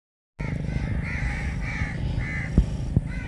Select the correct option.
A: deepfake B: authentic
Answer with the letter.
B